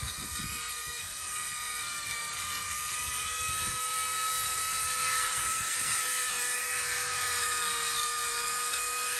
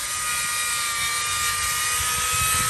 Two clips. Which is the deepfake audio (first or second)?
first